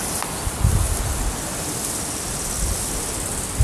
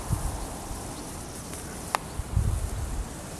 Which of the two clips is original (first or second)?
first